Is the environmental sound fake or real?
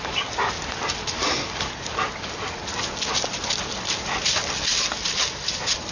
real